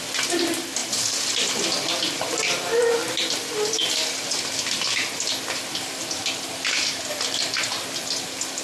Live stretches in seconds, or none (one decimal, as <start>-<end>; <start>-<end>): 0.0-8.6